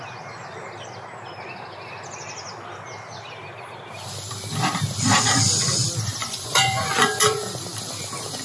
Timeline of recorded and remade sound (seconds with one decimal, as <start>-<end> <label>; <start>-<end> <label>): 0.0-6.2 recorded; 6.2-7.5 remade; 7.5-8.4 recorded